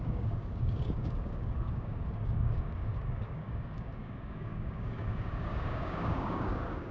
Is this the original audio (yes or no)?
no